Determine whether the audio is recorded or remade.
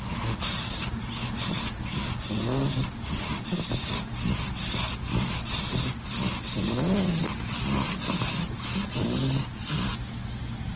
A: recorded